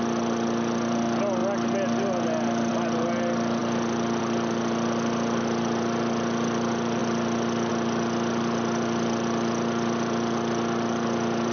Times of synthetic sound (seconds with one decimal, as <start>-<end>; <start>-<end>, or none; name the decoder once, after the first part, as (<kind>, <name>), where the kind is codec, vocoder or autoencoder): none